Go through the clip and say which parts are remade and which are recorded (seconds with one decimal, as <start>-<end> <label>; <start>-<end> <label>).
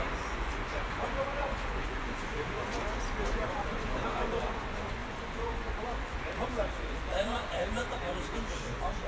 0.0-9.1 remade